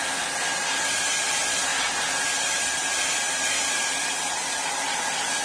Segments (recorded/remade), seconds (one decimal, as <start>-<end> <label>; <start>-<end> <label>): 0.0-5.4 recorded